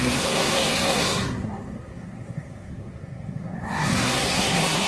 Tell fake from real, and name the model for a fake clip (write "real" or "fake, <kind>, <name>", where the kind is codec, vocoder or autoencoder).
fake, codec, SNAC